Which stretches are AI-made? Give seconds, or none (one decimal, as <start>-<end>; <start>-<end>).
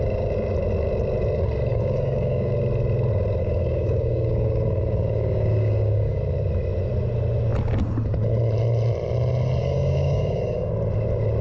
1.7-2.5; 3.4-6.2; 9.6-10.7